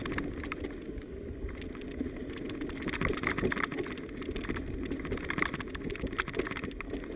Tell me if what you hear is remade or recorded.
recorded